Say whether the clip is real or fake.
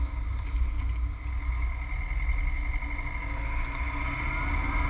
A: real